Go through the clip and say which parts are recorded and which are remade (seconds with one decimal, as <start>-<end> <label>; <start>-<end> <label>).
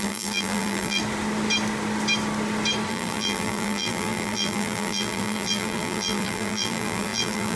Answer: 0.0-1.0 remade; 1.0-2.9 recorded; 2.9-7.6 remade